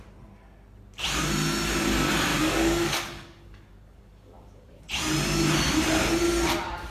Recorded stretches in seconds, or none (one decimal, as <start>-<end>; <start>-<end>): 0.0-2.3; 4.8-6.9